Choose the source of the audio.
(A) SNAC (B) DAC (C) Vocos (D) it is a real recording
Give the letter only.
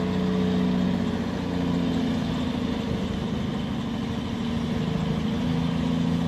D